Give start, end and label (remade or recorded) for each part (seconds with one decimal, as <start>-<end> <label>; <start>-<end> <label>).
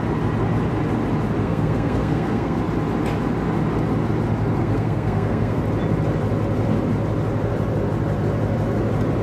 0.0-1.4 recorded; 1.4-2.6 remade; 2.6-4.6 recorded; 4.6-5.6 remade; 5.6-9.2 recorded